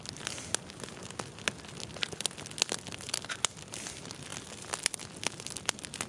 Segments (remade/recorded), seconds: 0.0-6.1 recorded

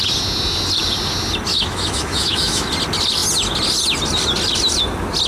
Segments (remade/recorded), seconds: 0.0-1.5 recorded; 1.5-2.7 remade; 2.7-5.3 recorded

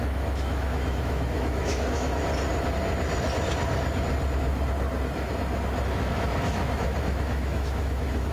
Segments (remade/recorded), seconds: 0.0-2.3 remade; 2.3-5.9 recorded; 5.9-8.3 remade

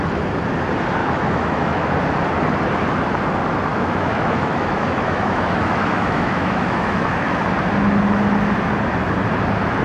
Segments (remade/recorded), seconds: 0.0-1.0 recorded; 1.0-1.9 remade; 1.9-3.7 recorded; 3.7-7.4 remade; 7.4-9.8 recorded

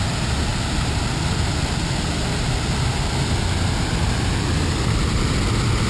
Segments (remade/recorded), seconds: 0.0-5.9 recorded

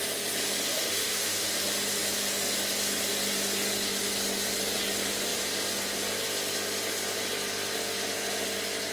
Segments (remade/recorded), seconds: 0.0-0.7 recorded; 0.7-1.6 remade; 1.6-8.9 recorded

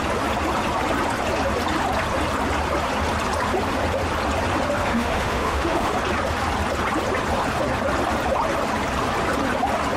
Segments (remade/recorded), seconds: 0.0-4.8 recorded; 4.8-5.9 remade; 5.9-10.0 recorded